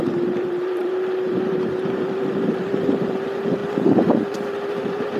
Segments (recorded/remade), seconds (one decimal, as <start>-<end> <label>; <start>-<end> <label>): 0.0-5.2 remade